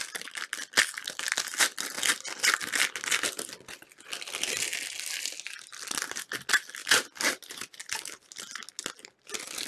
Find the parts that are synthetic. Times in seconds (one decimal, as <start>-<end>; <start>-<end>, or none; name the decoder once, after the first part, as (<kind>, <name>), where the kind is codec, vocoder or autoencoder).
none